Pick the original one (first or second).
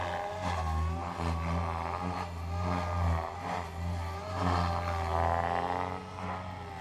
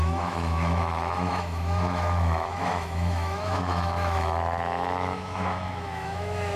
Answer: first